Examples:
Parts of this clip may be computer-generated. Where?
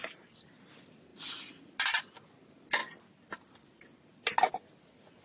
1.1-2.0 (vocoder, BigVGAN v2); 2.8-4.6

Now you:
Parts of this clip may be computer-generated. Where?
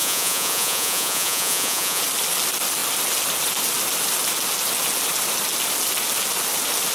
0.0-2.0 (vocoder, Vocos)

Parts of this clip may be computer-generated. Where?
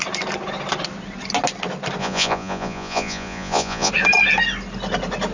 2.0-3.9 (vocoder, Vocos)